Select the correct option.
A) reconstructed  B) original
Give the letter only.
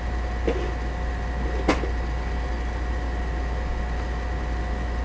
B